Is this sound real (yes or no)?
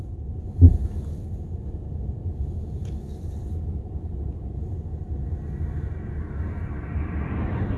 yes